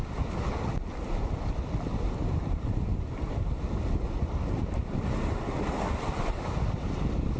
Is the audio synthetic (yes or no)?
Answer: no